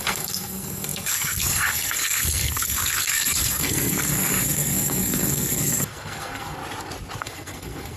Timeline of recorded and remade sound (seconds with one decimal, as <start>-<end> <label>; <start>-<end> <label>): 0.0-6.6 remade; 6.6-7.2 recorded; 7.2-8.0 remade